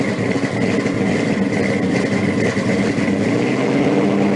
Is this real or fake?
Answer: real